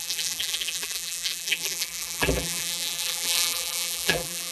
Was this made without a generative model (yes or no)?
no